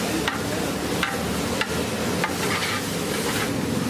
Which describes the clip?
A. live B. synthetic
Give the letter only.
A